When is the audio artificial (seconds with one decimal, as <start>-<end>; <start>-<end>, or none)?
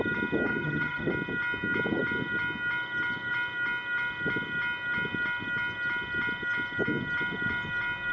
0.5-1.1